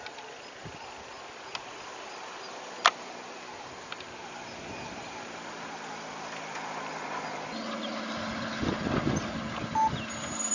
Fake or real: real